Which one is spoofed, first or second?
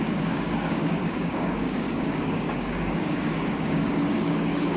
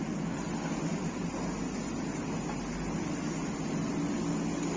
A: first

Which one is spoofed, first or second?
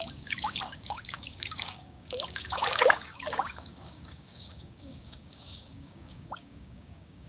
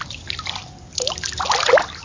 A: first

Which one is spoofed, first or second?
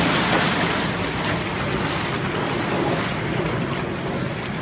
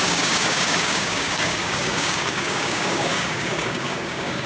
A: second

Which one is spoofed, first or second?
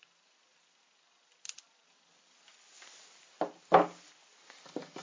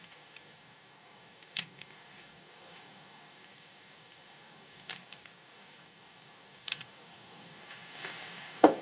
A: second